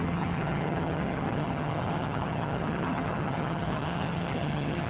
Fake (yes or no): yes